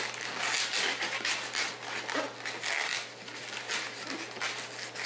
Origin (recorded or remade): recorded